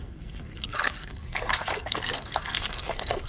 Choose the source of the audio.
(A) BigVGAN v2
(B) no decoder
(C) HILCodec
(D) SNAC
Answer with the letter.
D